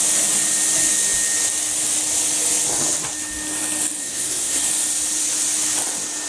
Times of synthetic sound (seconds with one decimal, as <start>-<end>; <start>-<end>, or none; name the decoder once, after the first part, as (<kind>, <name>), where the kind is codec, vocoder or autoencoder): 4.0-4.6 (codec, SNAC)